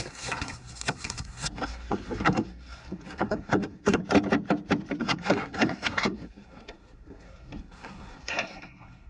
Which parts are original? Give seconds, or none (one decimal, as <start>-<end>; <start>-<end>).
4.0-5.0